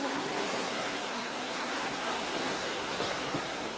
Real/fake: fake